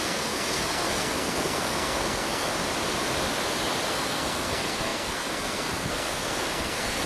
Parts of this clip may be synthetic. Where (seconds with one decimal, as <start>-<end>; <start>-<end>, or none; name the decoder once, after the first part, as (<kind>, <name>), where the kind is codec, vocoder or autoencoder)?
0.0-2.5 (codec, SNAC); 3.9-7.1